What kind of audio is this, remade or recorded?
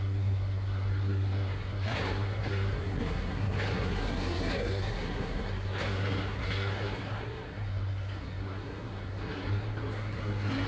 remade